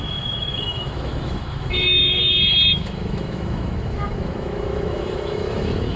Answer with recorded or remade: remade